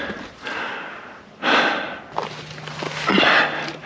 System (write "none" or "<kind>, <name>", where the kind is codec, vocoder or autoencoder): none